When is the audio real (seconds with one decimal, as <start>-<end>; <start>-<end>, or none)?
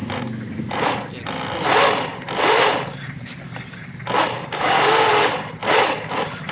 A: 0.0-4.4; 5.1-6.5